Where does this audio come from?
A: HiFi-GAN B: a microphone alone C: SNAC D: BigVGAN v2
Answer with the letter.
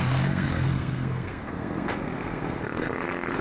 C